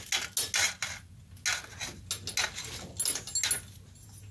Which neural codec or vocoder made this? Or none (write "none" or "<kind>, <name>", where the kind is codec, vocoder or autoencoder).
none